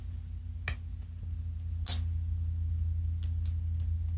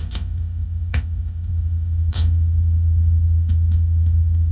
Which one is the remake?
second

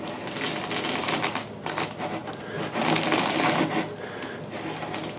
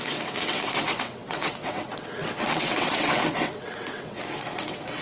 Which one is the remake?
second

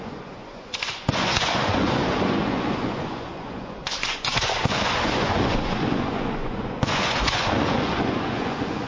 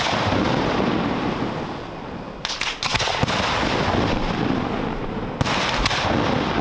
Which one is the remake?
first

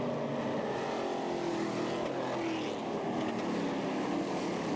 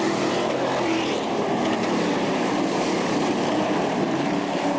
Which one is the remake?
second